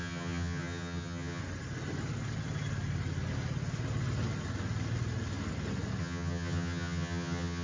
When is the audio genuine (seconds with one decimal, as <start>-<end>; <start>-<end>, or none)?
1.4-6.0